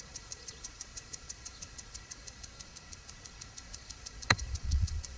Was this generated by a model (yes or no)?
yes